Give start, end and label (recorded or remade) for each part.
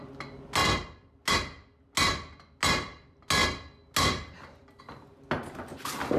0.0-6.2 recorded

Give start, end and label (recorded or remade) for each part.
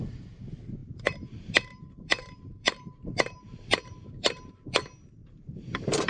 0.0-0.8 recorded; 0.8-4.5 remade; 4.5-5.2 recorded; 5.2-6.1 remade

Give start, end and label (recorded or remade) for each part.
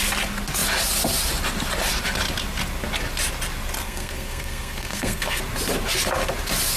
0.0-3.8 recorded; 3.8-5.4 remade; 5.4-6.8 recorded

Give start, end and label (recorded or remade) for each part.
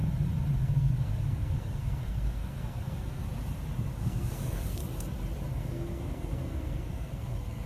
0.0-0.6 recorded; 0.6-3.2 remade; 3.2-3.9 recorded; 3.9-4.8 remade; 4.8-5.5 recorded; 5.5-7.7 remade